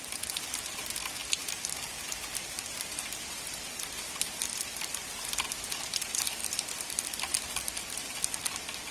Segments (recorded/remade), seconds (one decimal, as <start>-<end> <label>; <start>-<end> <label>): 0.0-8.9 recorded

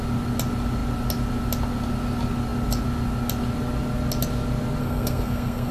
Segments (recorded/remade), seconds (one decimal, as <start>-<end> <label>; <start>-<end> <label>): 0.0-4.8 recorded; 4.8-5.7 remade

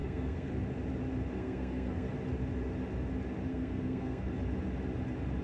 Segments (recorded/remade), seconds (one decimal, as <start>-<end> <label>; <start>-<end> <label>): 0.0-0.5 remade; 0.5-1.4 recorded; 1.4-2.1 remade; 2.1-3.5 recorded; 3.5-4.3 remade; 4.3-5.4 recorded

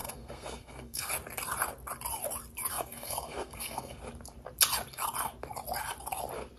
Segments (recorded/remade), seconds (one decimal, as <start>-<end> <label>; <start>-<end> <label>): 0.0-1.1 remade; 1.1-2.7 recorded; 2.7-4.0 remade; 4.0-6.6 recorded

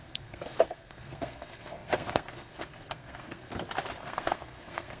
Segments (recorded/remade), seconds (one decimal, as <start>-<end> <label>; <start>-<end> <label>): 0.0-3.5 remade; 3.5-4.0 recorded; 4.0-5.0 remade

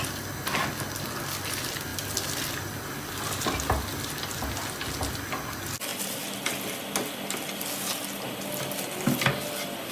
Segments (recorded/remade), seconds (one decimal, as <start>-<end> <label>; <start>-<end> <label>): 0.0-9.9 recorded

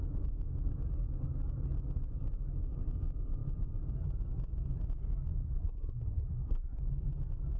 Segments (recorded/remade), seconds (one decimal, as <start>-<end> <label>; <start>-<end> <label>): 0.0-5.4 recorded; 5.4-6.8 remade; 6.8-7.6 recorded